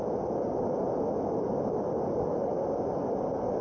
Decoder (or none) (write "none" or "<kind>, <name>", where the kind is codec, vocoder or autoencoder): none